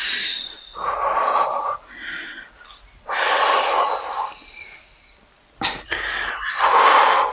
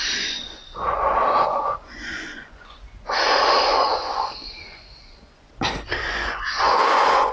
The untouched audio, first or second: first